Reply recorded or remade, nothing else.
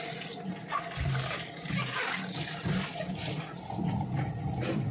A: recorded